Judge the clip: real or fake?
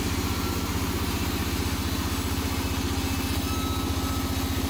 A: real